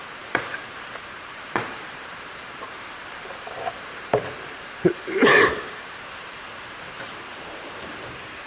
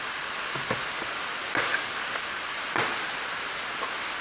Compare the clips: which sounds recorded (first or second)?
second